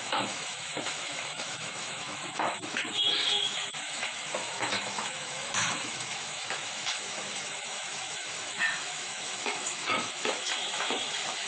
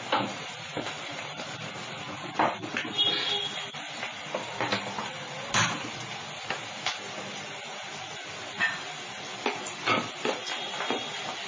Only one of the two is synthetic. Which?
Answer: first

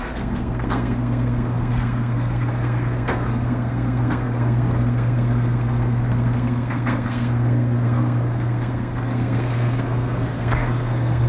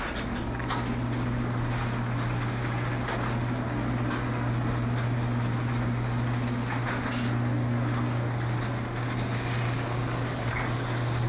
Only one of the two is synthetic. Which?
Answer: first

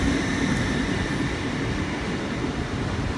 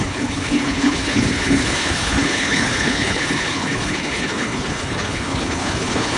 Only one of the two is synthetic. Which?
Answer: second